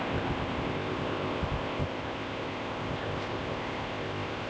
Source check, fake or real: fake